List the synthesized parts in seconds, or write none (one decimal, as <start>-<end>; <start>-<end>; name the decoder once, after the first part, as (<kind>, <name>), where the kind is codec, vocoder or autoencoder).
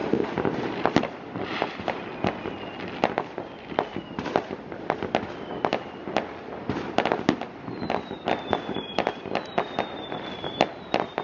none